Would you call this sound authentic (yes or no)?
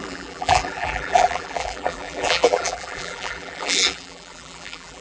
no